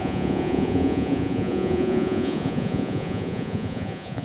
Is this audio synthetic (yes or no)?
yes